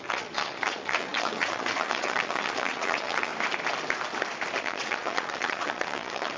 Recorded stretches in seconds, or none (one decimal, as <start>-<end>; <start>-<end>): 3.3-4.6